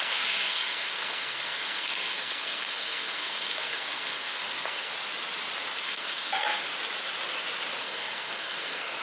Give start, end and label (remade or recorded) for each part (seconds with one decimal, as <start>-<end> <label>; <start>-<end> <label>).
0.0-4.9 remade; 4.9-5.8 recorded; 5.8-6.7 remade; 6.7-7.8 recorded; 7.8-9.0 remade